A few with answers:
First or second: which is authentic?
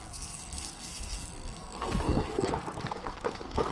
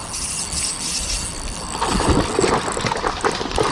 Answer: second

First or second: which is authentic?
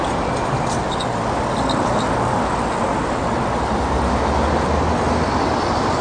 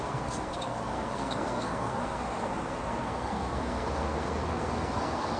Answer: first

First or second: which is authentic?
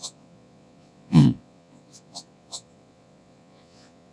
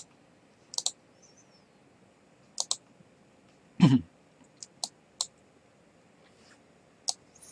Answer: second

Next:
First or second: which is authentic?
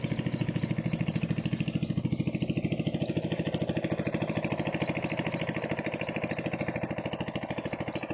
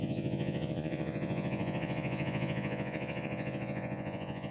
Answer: first